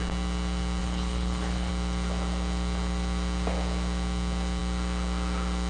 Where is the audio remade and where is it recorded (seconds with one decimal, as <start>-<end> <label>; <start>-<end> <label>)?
0.0-0.8 recorded; 0.8-1.7 remade; 1.7-5.7 recorded